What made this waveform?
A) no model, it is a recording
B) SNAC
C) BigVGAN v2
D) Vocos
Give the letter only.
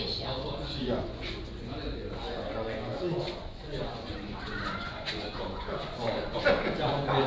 D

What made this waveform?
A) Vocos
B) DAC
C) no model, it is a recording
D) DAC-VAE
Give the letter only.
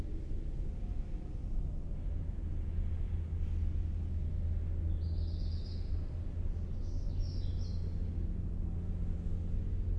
C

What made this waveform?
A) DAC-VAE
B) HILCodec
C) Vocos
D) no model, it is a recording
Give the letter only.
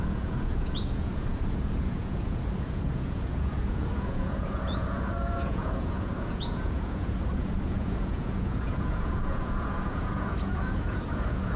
C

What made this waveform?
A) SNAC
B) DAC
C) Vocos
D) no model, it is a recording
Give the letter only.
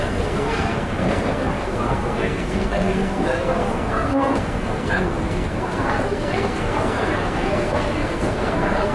A